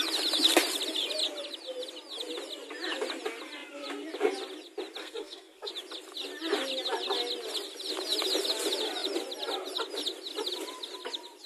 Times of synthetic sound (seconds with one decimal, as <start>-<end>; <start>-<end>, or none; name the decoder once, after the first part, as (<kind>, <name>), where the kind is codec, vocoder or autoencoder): 5.0-5.7 (codec, SNAC)